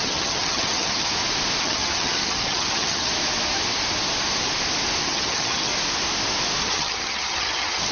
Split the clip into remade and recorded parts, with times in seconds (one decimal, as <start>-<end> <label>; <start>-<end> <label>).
0.0-1.1 remade; 1.1-1.6 recorded; 1.6-3.1 remade; 3.1-5.0 recorded; 5.0-5.7 remade; 5.7-6.6 recorded; 6.6-7.9 remade